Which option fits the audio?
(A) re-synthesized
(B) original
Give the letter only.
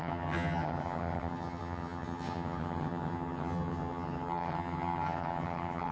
A